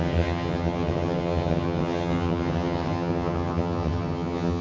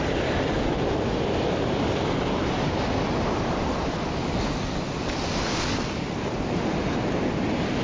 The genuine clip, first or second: second